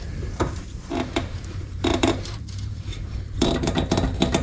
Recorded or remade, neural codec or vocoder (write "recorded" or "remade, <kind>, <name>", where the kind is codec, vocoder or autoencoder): remade, vocoder, BigVGAN v2